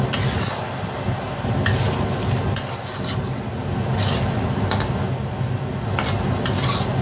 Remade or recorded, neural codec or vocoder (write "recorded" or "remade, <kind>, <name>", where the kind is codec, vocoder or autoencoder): recorded